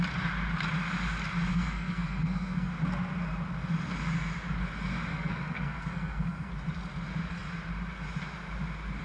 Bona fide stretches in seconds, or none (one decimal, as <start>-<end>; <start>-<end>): 0.0-1.5; 2.7-5.1; 6.5-9.0